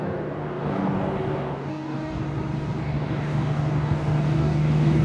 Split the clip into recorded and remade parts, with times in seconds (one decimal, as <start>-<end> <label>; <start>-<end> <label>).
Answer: 0.0-2.2 remade; 2.2-2.8 recorded; 2.8-5.0 remade